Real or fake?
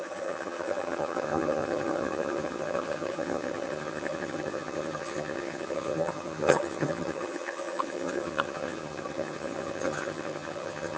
fake